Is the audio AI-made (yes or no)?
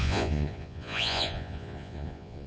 yes